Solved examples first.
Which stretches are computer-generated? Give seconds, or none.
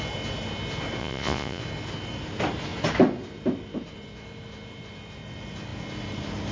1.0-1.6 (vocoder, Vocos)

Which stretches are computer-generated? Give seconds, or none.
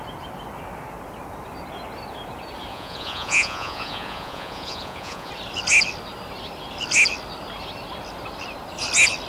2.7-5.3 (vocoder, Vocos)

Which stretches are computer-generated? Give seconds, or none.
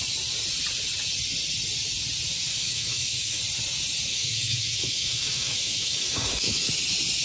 2.5-3.4 (autoencoder, DAC-VAE); 4.1-6.7